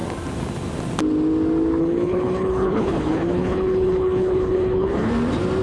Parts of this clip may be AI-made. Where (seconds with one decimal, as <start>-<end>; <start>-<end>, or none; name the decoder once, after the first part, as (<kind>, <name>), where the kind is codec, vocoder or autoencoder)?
1.8-5.1 (codec, HILCodec)